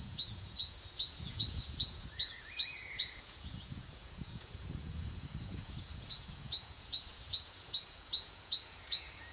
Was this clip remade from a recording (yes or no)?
yes